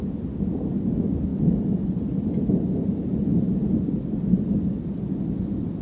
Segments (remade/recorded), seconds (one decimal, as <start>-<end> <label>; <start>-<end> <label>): 0.0-5.8 recorded